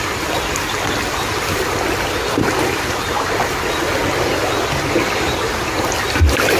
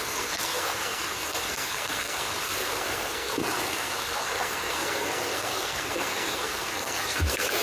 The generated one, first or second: second